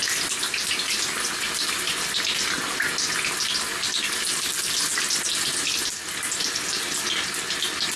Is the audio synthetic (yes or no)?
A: no